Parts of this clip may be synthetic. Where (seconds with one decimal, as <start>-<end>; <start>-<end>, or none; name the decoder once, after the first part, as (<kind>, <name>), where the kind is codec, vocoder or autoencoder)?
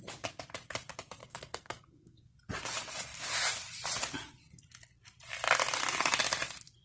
1.2-2.2 (codec, SNAC)